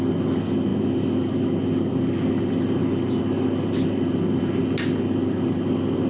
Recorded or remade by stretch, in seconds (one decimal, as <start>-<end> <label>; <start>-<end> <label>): 0.0-6.1 recorded